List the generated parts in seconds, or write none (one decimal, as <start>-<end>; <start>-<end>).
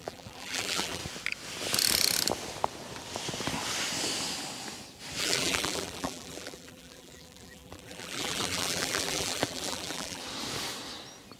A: 0.0-1.0; 5.2-10.2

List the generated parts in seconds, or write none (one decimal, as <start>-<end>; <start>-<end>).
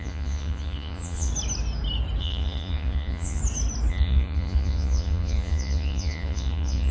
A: 0.0-1.3; 2.2-3.4; 3.9-6.9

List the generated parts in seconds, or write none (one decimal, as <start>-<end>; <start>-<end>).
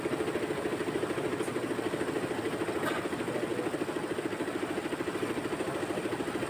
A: 0.0-1.5; 3.0-3.5; 4.2-6.5